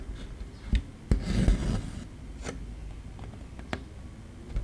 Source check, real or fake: real